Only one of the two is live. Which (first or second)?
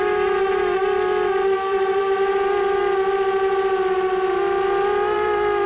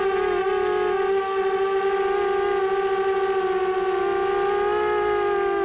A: second